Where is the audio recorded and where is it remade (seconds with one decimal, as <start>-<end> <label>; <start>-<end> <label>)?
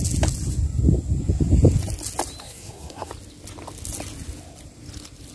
0.0-2.4 recorded; 2.4-3.1 remade; 3.1-5.3 recorded